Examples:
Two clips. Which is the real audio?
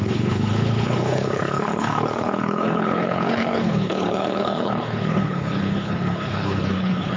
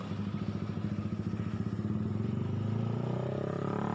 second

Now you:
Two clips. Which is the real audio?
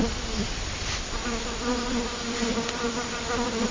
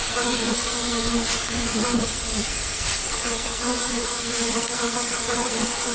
first